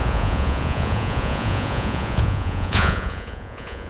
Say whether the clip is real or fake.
fake